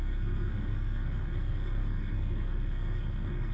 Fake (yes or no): yes